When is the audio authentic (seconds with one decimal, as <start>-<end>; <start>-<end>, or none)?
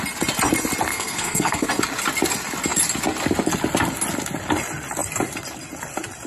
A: 0.0-0.9; 1.7-6.3